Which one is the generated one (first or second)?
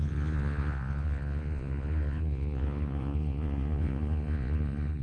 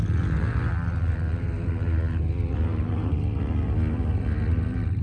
first